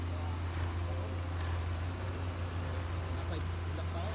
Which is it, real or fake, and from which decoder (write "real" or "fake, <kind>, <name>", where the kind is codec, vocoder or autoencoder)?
real